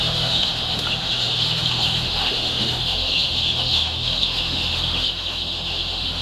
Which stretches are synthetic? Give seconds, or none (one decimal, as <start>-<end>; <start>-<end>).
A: 0.0-6.2